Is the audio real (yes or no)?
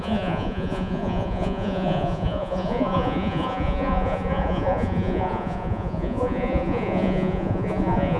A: no